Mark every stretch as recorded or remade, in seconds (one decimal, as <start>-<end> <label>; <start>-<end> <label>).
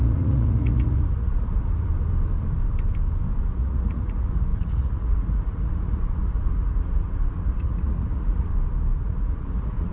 0.0-1.9 remade; 1.9-3.4 recorded; 3.4-8.5 remade; 8.5-9.0 recorded; 9.0-9.9 remade